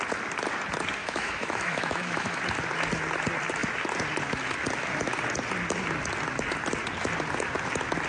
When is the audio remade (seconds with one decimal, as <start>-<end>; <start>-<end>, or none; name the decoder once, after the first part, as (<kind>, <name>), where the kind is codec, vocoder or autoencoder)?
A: 1.0-2.4 (autoencoder, DAC-VAE)

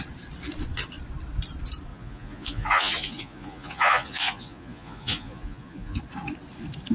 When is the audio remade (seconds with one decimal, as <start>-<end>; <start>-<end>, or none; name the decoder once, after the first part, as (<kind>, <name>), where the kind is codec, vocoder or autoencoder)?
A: 1.9-6.0 (vocoder, Vocos)

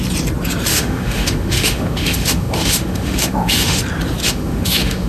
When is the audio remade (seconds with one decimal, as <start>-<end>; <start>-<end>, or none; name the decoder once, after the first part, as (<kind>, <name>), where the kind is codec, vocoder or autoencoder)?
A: 0.7-3.8 (autoencoder, DAC-VAE); 4.2-5.1

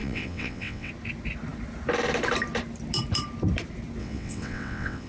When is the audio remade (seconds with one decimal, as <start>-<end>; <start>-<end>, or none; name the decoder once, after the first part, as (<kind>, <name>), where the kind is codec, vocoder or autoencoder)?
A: 0.0-0.9 (vocoder, WaveNeXt); 4.0-5.1

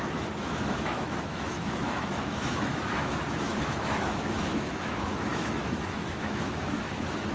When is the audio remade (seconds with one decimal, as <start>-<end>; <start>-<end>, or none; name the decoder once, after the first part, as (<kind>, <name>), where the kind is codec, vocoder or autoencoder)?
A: 0.0-7.3 (autoencoder, DAC-VAE)

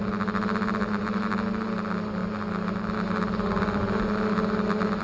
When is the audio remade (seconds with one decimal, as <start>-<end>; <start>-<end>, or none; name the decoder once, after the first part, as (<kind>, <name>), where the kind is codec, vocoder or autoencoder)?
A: none